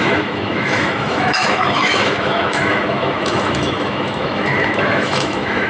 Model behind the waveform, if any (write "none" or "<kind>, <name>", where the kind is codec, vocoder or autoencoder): autoencoder, DAC-VAE